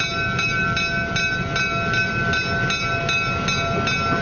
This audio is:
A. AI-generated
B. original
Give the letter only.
B